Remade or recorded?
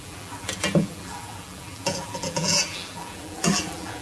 remade